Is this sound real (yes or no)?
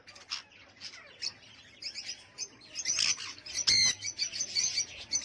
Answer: yes